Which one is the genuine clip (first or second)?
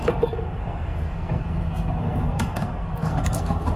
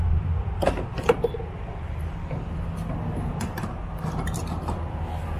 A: second